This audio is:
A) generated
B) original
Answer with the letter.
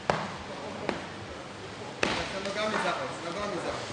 B